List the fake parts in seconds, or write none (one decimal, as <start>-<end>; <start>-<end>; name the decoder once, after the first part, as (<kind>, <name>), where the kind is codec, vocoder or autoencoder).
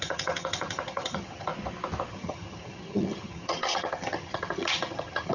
0.0-1.5 (vocoder, HiFi-GAN); 2.1-5.3